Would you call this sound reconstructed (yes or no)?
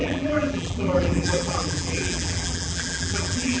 yes